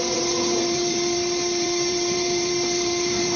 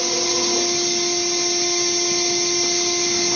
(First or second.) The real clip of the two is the second